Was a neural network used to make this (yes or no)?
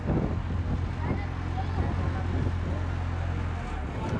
no